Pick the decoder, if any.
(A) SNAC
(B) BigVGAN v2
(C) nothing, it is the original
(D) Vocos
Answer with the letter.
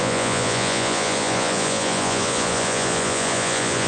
D